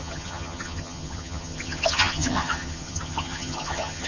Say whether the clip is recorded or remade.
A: remade